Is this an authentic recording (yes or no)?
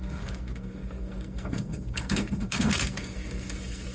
no